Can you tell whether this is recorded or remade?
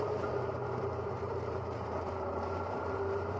remade